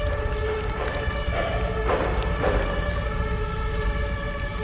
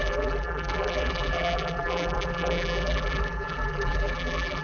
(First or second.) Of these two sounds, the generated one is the second